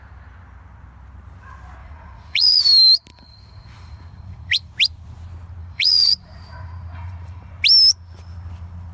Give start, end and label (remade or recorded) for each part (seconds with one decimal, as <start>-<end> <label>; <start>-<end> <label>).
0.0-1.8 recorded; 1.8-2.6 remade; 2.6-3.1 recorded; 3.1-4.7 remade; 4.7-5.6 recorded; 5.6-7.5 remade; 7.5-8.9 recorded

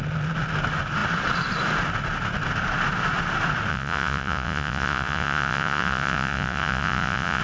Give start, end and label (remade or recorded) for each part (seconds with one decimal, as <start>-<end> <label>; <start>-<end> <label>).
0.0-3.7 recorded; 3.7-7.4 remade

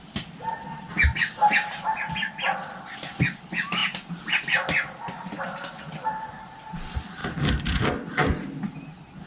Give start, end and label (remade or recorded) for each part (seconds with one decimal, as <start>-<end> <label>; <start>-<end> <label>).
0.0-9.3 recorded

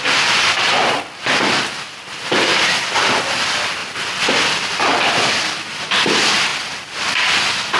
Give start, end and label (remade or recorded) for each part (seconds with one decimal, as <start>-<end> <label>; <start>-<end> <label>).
0.0-3.8 remade; 3.8-4.4 recorded; 4.4-6.5 remade; 6.5-7.8 recorded

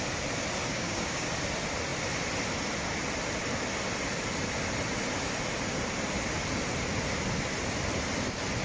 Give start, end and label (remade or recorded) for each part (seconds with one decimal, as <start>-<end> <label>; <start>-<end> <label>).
0.0-0.7 recorded; 0.7-1.3 remade; 1.3-8.6 recorded